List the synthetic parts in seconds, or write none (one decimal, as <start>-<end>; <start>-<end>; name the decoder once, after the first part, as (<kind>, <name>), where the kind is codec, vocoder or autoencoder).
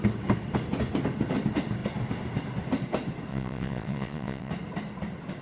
3.3-4.5 (vocoder, WaveNeXt)